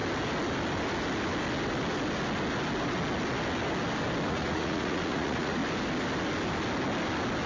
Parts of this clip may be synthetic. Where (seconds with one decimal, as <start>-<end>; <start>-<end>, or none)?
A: 4.3-5.6